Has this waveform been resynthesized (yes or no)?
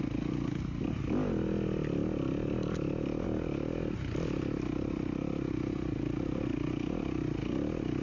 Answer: no